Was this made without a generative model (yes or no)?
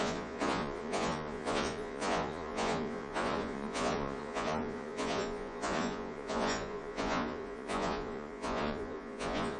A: no